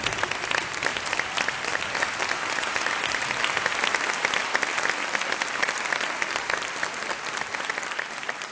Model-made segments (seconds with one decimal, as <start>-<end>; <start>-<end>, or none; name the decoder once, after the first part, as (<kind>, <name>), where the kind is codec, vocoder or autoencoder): 0.9-3.4 (vocoder, BigVGAN v2)